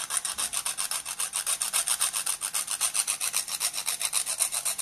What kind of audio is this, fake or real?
real